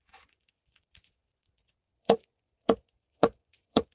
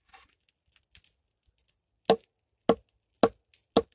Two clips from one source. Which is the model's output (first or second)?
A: first